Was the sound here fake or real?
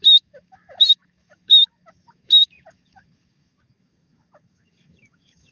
fake